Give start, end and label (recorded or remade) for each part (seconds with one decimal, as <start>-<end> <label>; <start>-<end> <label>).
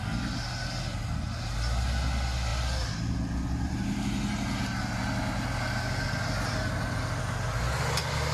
0.0-8.3 recorded